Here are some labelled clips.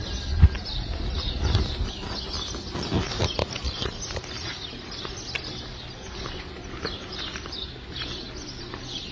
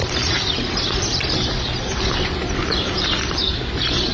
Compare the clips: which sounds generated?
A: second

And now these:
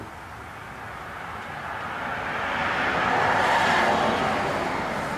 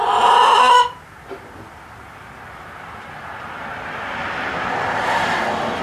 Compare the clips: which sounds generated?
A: second